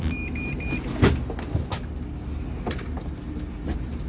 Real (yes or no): yes